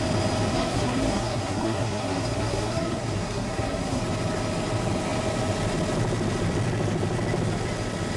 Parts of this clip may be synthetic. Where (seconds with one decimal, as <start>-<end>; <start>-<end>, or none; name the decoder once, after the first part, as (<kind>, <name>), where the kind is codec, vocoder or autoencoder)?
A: 0.5-4.0 (codec, SNAC)